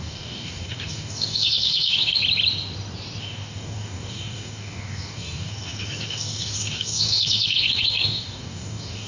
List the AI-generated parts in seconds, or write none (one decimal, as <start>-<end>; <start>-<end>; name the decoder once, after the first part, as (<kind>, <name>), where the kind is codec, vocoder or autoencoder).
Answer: 0.0-2.2 (codec, DAC); 3.2-9.1